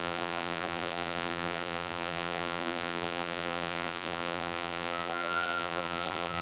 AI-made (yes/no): yes